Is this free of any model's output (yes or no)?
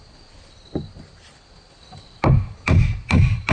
yes